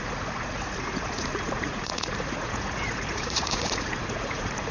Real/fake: fake